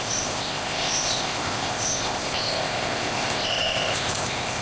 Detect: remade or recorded remade